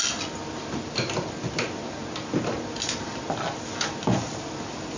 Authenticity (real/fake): real